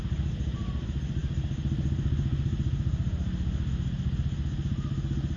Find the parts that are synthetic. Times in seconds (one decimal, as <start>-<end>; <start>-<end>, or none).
none